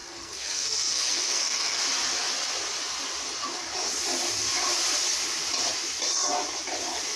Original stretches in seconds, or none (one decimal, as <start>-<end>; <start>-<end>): 1.8-7.2